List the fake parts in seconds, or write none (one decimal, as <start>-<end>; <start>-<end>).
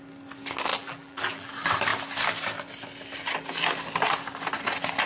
0.7-1.5